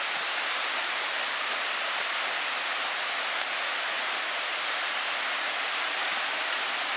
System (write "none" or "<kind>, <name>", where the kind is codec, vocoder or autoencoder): none